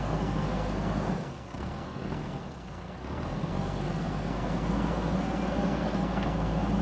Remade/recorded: remade